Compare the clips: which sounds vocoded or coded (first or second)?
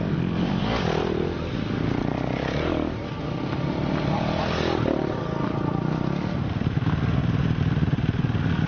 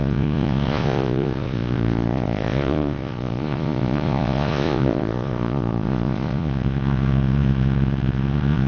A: second